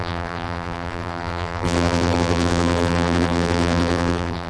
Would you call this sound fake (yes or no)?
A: yes